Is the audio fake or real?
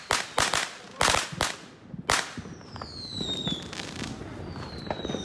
real